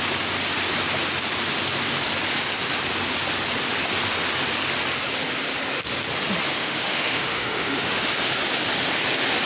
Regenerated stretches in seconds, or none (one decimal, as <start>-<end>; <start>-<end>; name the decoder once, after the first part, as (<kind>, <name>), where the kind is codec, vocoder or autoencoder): 6.6-8.0 (autoencoder, DAC-VAE)